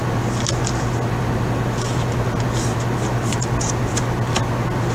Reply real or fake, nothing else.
real